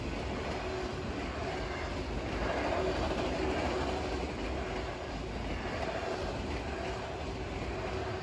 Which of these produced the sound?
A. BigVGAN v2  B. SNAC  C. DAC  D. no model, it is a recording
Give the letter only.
D